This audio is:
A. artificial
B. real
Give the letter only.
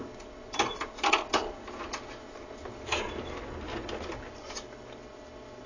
B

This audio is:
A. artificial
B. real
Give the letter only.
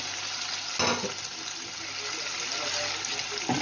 B